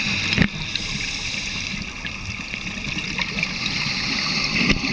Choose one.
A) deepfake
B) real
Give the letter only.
B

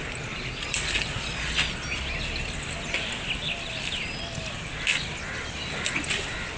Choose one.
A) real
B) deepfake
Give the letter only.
A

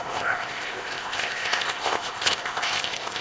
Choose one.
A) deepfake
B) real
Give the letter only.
A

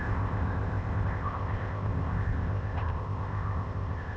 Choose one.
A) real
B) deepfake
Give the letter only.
B